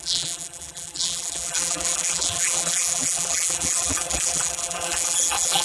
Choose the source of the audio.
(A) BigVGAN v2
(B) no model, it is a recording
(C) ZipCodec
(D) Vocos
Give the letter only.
A